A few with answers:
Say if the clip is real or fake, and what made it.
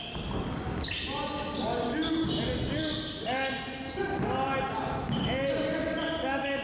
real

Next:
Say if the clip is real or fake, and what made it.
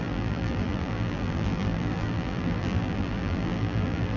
fake, vocoder, BigVGAN v2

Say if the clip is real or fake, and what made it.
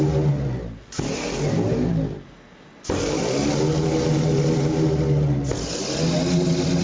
real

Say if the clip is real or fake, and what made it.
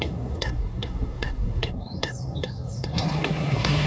fake, codec, SNAC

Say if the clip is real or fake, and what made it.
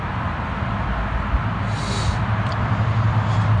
real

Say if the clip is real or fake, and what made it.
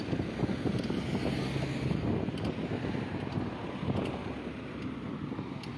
real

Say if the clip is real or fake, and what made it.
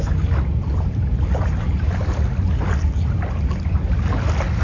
real